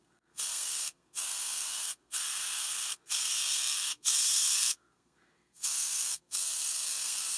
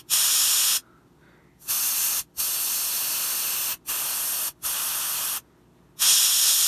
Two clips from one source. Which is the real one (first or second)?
second